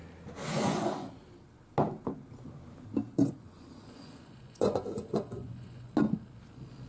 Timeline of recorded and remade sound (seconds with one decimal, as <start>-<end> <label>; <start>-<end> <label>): 0.0-0.5 recorded; 0.5-1.2 remade; 1.2-3.1 recorded; 3.1-5.9 remade; 5.9-6.9 recorded